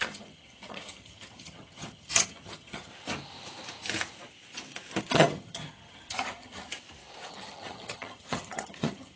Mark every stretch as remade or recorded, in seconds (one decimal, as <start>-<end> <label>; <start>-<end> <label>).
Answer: 0.0-2.9 remade; 2.9-5.0 recorded; 5.0-6.7 remade; 6.7-7.3 recorded; 7.3-9.2 remade